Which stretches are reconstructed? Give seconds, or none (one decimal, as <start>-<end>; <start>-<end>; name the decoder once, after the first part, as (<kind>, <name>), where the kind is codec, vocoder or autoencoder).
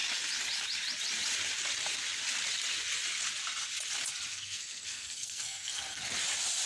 4.3-6.0 (codec, SNAC)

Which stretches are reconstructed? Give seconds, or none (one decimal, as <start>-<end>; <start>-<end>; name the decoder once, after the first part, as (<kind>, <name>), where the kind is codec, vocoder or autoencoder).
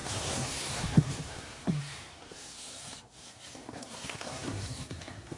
0.0-5.4 (codec, SNAC)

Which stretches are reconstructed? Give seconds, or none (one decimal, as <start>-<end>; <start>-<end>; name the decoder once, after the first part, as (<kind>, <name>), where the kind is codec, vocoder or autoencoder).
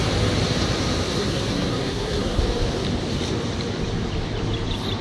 1.2-2.4 (codec, SNAC)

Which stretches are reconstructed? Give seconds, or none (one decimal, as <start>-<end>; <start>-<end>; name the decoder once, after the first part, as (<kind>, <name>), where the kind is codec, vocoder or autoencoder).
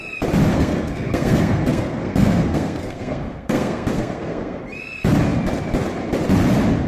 0.5-4.6 (codec, SNAC)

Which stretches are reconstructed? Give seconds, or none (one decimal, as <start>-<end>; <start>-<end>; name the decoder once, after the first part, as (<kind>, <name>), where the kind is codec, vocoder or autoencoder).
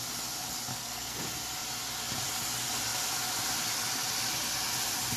0.7-1.2 (codec, SNAC)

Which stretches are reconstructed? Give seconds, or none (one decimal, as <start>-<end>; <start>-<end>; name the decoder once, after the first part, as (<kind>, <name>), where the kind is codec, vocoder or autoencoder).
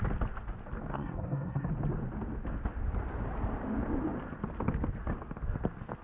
0.9-1.7 (codec, SNAC)